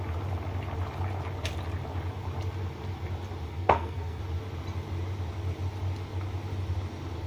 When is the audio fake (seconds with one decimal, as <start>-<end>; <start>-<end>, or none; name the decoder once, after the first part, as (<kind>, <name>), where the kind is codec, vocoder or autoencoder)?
3.5-4.2 (codec, SNAC)